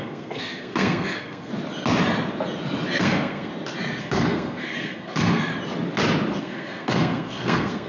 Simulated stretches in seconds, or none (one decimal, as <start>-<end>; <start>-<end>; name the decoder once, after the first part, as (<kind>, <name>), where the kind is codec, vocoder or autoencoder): 0.0-1.5 (codec, SNAC); 3.0-3.5; 4.0-5.5; 6.4-7.9